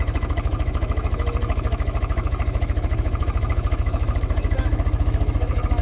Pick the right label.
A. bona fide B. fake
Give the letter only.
B